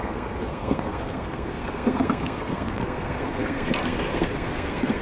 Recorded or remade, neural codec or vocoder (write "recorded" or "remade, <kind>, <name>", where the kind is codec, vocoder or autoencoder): remade, codec, SNAC